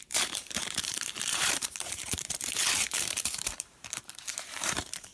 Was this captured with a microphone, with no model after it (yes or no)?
no